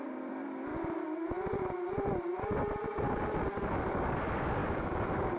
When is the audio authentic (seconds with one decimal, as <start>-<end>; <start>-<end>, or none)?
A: 0.7-3.9